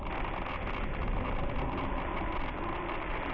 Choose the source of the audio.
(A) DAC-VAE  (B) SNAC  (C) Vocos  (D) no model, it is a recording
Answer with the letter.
D